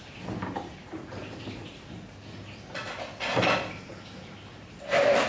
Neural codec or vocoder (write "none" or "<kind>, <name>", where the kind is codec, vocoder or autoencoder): none